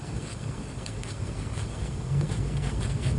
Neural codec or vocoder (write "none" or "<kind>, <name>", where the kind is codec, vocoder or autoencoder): codec, SNAC